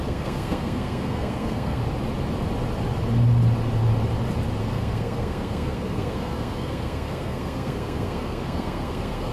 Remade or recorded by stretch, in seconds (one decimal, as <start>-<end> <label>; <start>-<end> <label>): 0.0-1.8 remade; 1.8-4.6 recorded; 4.6-9.3 remade